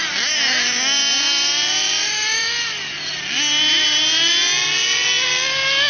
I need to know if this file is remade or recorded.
recorded